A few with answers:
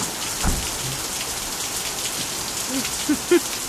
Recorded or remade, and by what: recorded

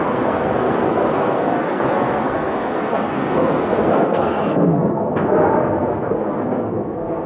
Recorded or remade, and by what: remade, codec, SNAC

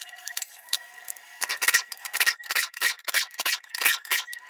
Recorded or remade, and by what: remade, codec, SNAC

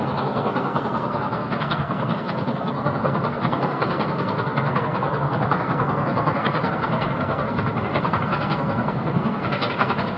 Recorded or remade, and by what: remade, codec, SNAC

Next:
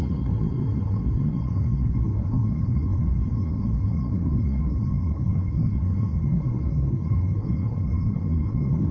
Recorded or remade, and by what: remade, codec, SNAC